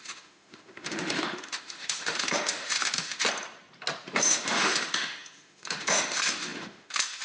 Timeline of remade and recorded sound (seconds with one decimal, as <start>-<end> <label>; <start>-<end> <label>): 0.0-3.2 remade; 3.2-4.2 recorded; 4.2-7.2 remade